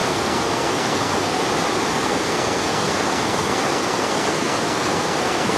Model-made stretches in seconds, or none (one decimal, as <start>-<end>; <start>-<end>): 0.0-1.4; 1.9-5.6